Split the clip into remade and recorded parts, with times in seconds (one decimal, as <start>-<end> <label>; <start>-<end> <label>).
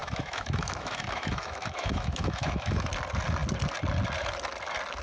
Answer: 0.0-2.9 remade; 2.9-5.0 recorded